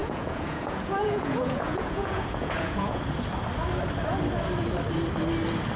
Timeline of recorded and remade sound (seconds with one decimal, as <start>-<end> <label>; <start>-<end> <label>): 0.0-3.0 remade; 3.0-5.8 recorded